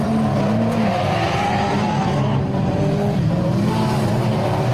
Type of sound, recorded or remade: remade